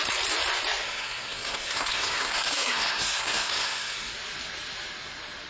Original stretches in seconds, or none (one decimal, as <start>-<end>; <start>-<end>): 0.0-0.8; 4.1-5.5